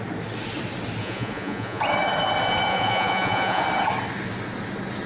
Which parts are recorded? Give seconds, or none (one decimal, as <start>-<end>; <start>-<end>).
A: 0.0-1.0; 1.8-2.7; 3.6-5.1